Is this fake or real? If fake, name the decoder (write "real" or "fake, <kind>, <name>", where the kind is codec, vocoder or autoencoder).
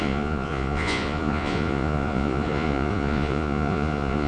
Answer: fake, vocoder, Vocos